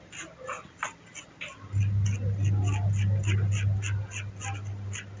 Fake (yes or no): no